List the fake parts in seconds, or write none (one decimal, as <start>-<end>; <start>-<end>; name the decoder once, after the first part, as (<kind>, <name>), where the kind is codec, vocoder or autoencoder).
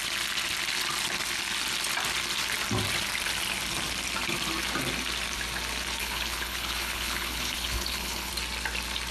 6.0-8.3 (codec, HILCodec)